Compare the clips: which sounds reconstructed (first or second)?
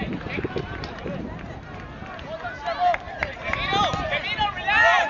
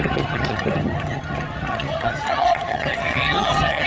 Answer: second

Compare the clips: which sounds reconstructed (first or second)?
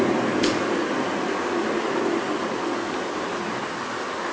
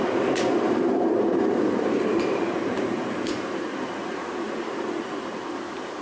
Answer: second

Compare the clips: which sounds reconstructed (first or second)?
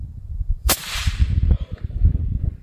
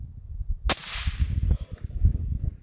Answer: first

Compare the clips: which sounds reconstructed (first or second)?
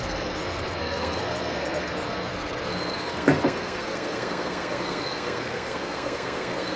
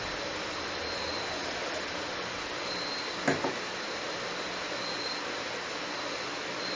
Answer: first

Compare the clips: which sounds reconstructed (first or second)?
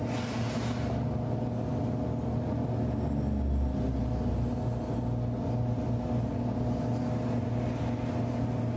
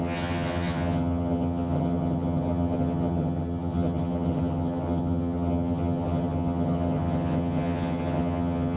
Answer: second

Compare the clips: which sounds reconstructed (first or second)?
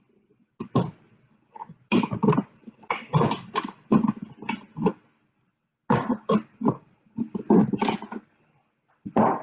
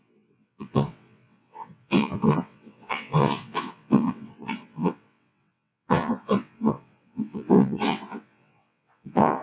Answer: second